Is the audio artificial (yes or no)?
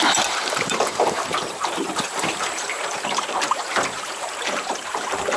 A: yes